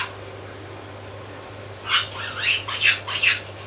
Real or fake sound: real